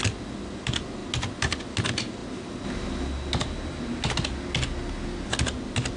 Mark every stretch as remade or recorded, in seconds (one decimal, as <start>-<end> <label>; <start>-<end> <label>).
0.0-6.0 recorded

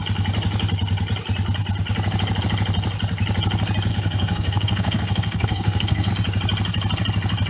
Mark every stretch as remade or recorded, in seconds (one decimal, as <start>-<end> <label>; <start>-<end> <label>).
0.0-3.9 recorded; 3.9-6.1 remade; 6.1-7.5 recorded